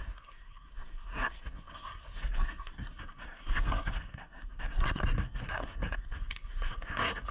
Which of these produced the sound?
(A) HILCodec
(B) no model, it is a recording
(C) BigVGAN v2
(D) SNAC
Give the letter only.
D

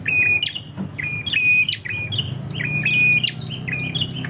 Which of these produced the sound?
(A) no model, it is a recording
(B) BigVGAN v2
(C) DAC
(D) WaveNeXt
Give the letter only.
A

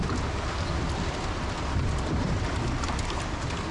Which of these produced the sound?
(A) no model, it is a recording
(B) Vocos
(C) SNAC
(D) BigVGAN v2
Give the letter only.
A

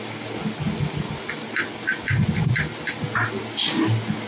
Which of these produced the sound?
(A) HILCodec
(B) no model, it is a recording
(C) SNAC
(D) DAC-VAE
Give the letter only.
B